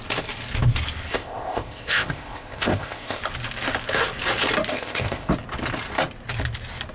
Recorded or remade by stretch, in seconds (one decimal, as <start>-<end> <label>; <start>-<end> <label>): 0.0-1.1 recorded; 1.1-3.2 remade; 3.2-4.7 recorded; 4.7-5.3 remade; 5.3-6.9 recorded